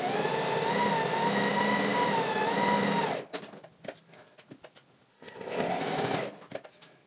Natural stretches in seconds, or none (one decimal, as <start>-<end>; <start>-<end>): 0.0-5.1; 5.8-7.1